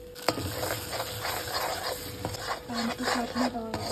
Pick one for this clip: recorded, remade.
recorded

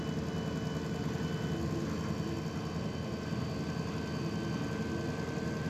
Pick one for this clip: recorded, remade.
recorded